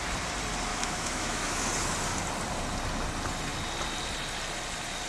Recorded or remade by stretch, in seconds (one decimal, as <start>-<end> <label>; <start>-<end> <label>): 0.0-0.7 recorded; 0.7-1.6 remade; 1.6-5.1 recorded

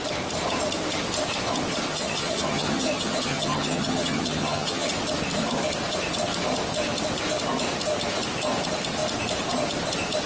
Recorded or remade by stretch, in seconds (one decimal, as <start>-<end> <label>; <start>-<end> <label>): 0.0-1.9 recorded; 1.9-4.9 remade; 4.9-10.3 recorded

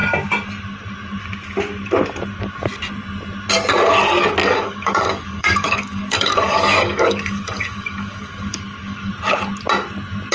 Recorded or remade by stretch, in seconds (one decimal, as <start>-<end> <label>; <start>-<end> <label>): 0.0-4.4 recorded; 4.4-9.1 remade; 9.1-10.3 recorded

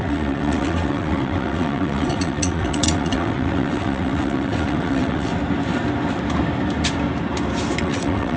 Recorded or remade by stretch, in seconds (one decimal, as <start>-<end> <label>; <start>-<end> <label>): 0.0-5.3 remade; 5.3-7.8 recorded; 7.8-8.4 remade

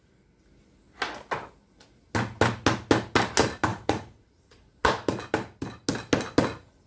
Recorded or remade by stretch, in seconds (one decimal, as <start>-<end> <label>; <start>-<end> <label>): 0.0-3.7 recorded; 3.7-4.9 remade; 4.9-6.9 recorded

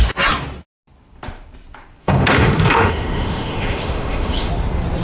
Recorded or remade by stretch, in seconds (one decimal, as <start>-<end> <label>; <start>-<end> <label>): 0.0-2.0 recorded; 2.0-4.5 remade; 4.5-5.0 recorded

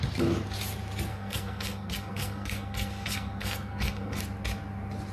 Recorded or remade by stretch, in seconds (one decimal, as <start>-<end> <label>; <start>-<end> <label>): 0.0-1.1 recorded; 1.1-4.2 remade; 4.2-5.1 recorded